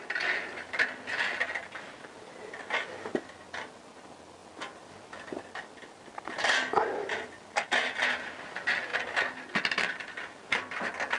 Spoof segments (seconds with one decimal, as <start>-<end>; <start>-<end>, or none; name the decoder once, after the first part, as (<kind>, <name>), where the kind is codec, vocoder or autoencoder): none